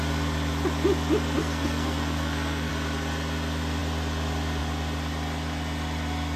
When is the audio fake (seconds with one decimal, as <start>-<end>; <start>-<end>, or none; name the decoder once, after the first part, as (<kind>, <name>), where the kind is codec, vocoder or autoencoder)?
1.4-2.7 (codec, SNAC)